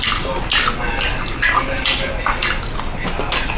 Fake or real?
real